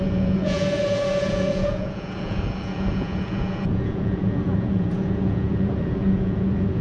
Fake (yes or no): yes